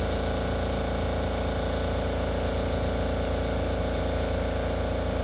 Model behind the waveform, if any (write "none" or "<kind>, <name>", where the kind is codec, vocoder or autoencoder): none